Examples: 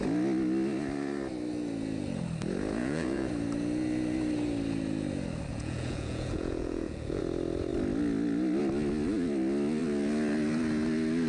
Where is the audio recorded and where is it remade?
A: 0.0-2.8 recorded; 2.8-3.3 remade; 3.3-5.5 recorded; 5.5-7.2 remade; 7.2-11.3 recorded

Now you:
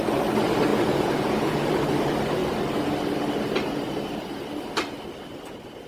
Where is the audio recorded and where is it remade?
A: 0.0-0.7 recorded; 0.7-1.7 remade; 1.7-5.9 recorded